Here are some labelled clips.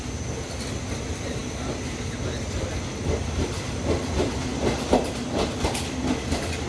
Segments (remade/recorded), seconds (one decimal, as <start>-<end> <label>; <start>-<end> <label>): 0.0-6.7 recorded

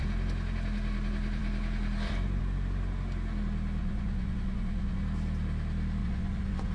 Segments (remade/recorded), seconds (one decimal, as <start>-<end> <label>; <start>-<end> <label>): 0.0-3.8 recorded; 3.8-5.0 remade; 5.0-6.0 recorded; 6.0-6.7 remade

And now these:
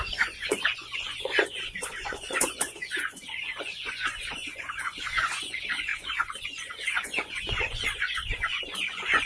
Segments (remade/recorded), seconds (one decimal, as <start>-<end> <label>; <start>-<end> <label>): 0.0-9.3 remade

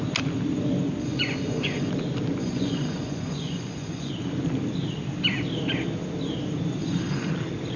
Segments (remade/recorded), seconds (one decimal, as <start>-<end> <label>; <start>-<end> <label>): 0.0-1.0 recorded; 1.0-1.9 remade; 1.9-2.4 recorded; 2.4-4.1 remade; 4.1-6.8 recorded; 6.8-7.3 remade; 7.3-7.8 recorded